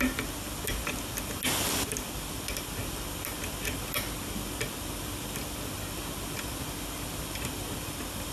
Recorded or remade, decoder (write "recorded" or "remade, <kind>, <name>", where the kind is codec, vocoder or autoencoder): recorded